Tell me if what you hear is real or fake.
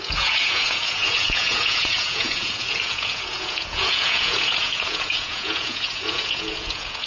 fake